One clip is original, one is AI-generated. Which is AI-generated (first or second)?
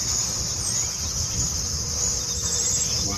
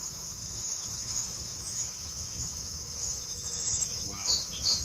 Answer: second